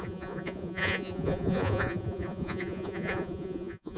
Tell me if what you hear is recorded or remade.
remade